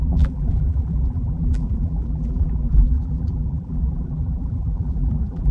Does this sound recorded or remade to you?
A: remade